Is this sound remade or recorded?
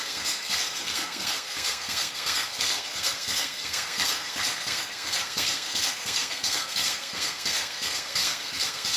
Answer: remade